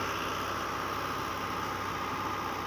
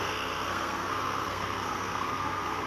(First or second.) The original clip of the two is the first